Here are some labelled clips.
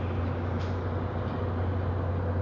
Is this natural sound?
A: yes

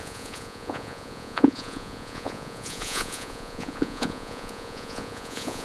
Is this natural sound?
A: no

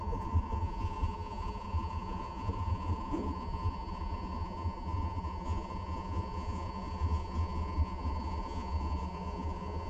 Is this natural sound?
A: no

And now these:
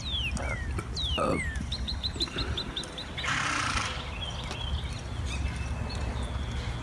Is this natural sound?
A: yes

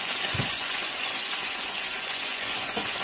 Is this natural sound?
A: no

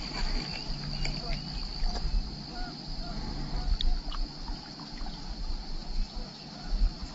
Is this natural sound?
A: yes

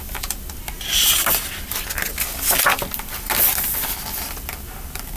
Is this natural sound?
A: yes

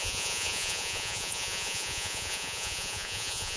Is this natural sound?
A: no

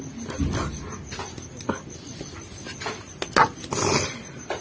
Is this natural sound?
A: yes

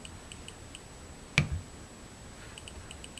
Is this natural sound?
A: yes